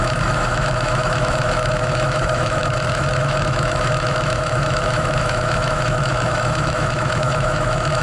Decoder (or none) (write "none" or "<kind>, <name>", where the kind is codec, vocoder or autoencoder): autoencoder, DAC-VAE